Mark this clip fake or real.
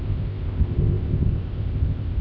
fake